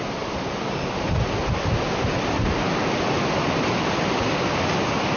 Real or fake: real